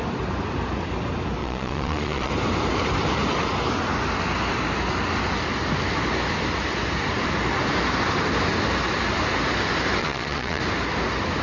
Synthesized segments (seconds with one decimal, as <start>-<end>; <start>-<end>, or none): 1.4-2.3; 10.0-10.6

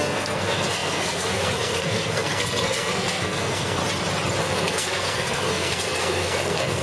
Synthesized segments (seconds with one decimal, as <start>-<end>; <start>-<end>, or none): 0.0-3.8; 4.4-6.8

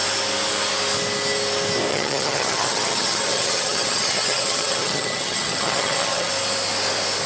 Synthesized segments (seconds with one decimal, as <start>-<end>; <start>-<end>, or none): 1.9-6.3

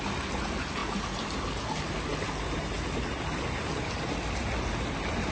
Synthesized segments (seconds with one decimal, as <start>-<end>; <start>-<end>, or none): none

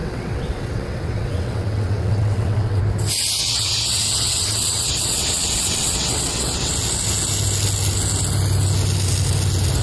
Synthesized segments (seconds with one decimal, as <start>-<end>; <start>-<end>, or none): 0.0-2.8; 3.4-6.7

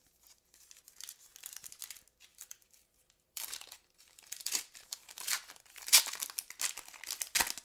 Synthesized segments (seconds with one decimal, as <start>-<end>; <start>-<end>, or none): 2.3-6.2

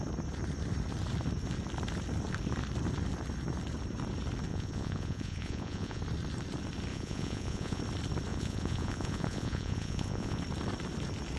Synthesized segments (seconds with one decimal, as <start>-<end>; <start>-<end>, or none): 4.5-6.0; 6.9-7.8; 8.3-10.4

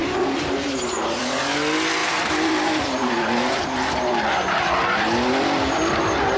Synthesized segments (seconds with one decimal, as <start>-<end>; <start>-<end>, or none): 0.0-1.2; 2.0-4.7